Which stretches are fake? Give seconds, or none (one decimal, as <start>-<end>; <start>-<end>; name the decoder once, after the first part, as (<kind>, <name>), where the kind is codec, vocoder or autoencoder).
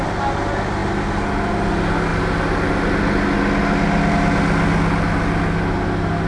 none